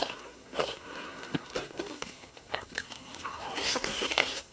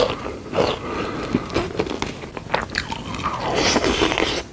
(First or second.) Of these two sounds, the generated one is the first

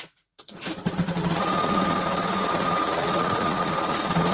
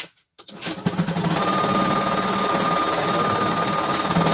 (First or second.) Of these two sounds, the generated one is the first